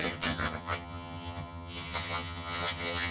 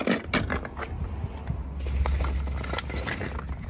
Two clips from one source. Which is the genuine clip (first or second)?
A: second